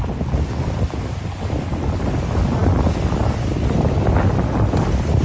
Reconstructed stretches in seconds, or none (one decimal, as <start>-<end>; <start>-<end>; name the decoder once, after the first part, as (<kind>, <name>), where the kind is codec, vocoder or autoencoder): none